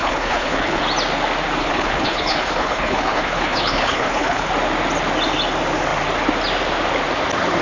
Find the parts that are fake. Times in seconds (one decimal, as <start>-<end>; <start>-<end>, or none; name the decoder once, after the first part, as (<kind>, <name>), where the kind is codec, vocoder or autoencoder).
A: 0.0-0.8 (codec, HILCodec); 1.6-4.5